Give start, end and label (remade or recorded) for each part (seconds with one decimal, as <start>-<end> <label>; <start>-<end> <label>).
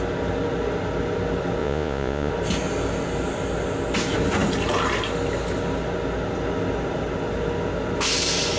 0.0-1.6 recorded; 1.6-2.3 remade; 2.3-8.6 recorded